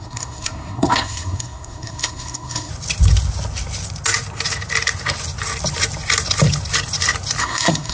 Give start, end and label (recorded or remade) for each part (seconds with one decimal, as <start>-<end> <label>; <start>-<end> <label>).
0.0-2.7 remade; 2.7-7.4 recorded; 7.4-7.9 remade

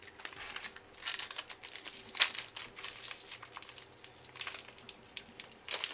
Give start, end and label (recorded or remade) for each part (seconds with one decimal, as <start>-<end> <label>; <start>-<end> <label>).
0.0-5.9 recorded

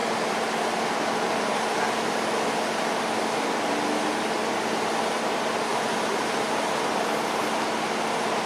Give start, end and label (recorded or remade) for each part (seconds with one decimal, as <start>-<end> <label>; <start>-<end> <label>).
0.0-8.5 recorded

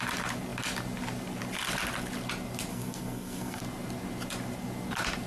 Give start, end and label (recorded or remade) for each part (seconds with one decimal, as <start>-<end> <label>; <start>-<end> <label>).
0.0-2.7 recorded; 2.7-3.6 remade; 3.6-5.3 recorded

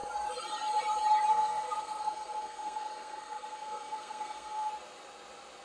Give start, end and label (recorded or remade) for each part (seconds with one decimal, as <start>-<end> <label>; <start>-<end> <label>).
0.0-1.3 recorded; 1.3-4.7 remade; 4.7-5.6 recorded

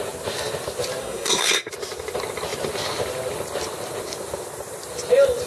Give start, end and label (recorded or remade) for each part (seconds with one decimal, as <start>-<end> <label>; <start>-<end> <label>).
0.0-1.0 recorded; 1.0-1.7 remade; 1.7-5.5 recorded

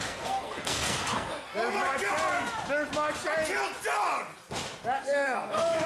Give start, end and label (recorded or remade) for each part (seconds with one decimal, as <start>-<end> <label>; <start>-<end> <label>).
0.0-1.5 remade; 1.5-5.0 recorded; 5.0-5.9 remade